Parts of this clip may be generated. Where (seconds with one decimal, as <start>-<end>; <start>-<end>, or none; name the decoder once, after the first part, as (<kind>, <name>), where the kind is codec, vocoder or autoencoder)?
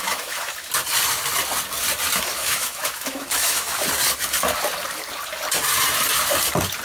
0.0-0.7 (autoencoder, DAC-VAE); 2.4-3.7